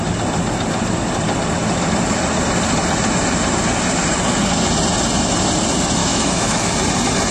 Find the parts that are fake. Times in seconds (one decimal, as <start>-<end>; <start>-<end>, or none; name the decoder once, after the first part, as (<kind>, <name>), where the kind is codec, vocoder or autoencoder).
6.0-6.7 (autoencoder, DAC-VAE)

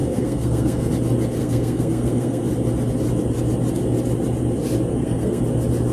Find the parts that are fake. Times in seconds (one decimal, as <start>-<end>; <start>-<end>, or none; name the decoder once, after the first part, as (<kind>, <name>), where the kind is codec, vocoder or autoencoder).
0.0-0.9 (codec, SNAC); 1.4-2.4; 4.9-5.4

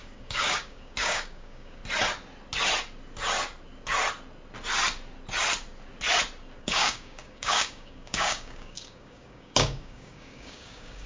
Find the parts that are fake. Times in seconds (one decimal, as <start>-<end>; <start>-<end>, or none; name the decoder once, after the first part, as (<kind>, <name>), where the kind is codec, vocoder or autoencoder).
0.0-1.8 (codec, DAC); 6.6-11.1

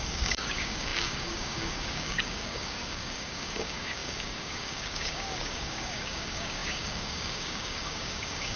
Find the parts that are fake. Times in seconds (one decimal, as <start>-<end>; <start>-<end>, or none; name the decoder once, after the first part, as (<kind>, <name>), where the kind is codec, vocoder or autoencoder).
0.0-8.6 (codec, DAC)

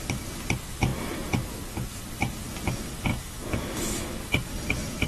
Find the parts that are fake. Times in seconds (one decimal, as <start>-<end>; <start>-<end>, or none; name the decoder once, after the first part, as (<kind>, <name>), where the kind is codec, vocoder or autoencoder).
3.1-4.2 (autoencoder, DAC-VAE)

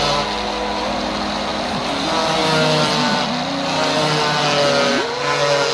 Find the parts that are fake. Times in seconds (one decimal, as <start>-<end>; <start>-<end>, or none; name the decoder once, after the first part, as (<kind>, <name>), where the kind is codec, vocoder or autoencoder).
none

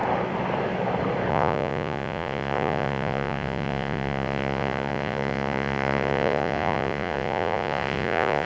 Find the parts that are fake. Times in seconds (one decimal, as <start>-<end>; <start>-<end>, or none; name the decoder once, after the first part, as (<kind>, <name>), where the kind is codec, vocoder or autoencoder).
1.3-8.5 (vocoder, Vocos)

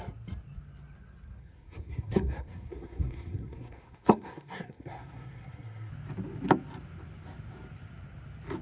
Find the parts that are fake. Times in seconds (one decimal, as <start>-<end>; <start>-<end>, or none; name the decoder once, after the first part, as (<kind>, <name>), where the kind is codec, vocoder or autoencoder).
1.4-5.9 (codec, SNAC)